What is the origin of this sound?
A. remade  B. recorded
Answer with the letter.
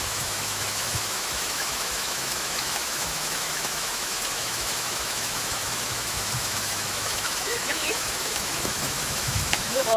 A